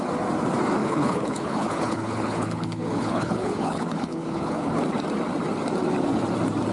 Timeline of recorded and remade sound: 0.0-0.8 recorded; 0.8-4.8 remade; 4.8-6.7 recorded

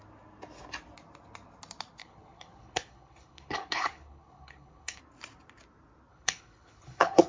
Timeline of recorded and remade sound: 0.0-2.0 recorded; 2.0-5.0 remade; 5.0-6.1 recorded; 6.1-7.3 remade